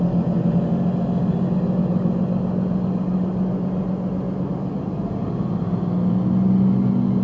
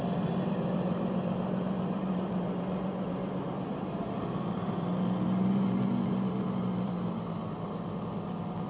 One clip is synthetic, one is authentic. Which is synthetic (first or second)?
second